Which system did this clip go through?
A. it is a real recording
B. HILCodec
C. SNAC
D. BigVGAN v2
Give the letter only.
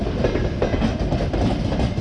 A